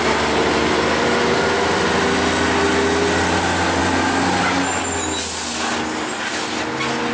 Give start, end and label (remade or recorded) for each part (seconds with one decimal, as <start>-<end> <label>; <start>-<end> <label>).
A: 0.0-7.1 recorded